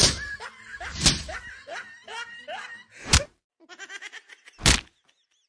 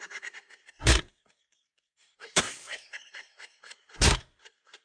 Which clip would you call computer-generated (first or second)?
second